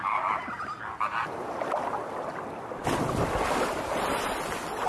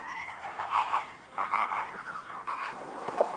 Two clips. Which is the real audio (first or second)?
first